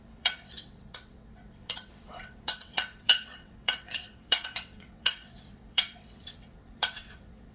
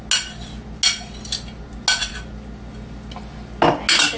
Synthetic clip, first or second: first